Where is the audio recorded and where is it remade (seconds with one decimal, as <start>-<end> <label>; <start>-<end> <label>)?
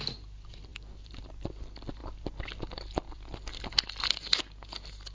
0.0-5.1 recorded